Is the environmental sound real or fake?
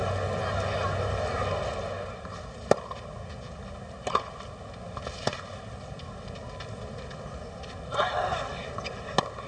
real